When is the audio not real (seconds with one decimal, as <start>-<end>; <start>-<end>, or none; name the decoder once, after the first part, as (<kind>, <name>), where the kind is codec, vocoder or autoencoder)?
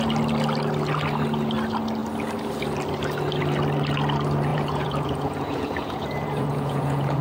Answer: 4.5-7.2 (vocoder, Vocos)